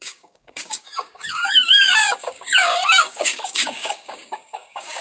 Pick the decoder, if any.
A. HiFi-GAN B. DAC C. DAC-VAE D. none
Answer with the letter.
B